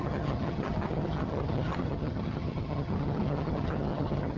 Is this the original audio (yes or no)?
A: no